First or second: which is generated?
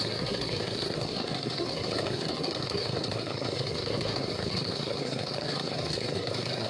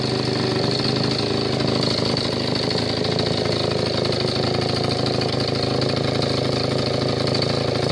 first